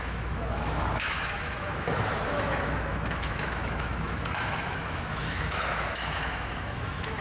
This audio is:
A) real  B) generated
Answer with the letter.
B